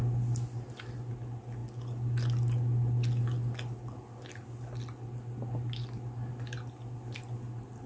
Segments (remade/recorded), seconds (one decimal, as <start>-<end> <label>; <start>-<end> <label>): 0.0-7.9 recorded